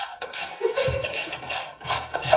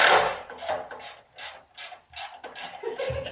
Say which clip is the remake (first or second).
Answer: first